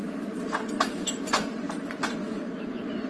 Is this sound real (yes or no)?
yes